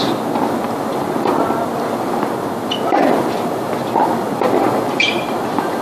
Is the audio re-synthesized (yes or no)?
no